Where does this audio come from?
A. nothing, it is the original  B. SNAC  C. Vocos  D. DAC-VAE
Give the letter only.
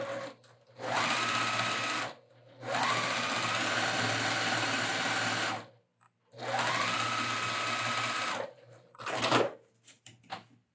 A